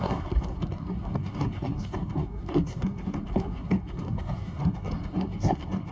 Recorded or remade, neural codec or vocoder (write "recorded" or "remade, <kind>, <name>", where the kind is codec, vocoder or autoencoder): remade, codec, SNAC